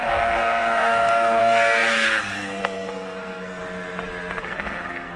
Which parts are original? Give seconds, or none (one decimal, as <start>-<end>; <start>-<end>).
3.6-4.4